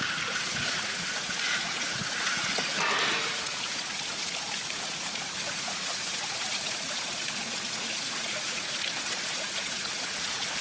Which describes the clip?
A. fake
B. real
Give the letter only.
A